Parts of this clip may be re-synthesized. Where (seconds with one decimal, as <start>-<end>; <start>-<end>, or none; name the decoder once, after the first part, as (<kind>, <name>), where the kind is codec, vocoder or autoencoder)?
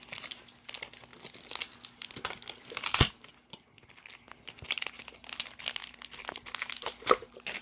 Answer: none